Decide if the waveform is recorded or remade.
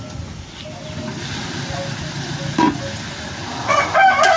recorded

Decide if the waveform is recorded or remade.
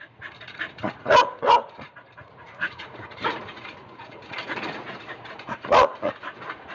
remade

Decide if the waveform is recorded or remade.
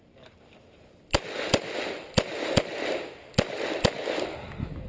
recorded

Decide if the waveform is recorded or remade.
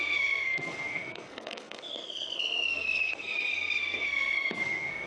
remade